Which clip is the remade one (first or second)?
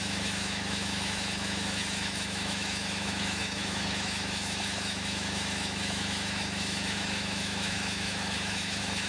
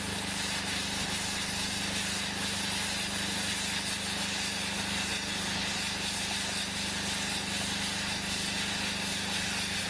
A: first